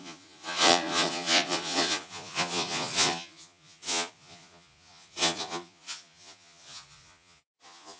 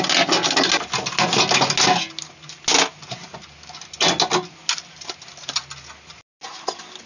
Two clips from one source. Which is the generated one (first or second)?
first